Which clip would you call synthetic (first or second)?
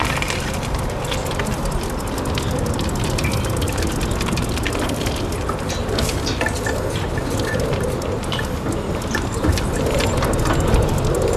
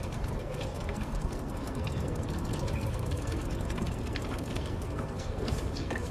second